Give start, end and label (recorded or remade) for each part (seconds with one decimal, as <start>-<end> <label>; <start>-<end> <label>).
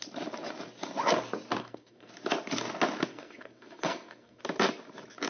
0.0-1.6 recorded; 1.6-2.1 remade; 2.1-3.1 recorded; 3.1-4.4 remade; 4.4-5.3 recorded